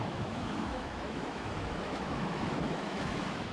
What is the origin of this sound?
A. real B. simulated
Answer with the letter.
B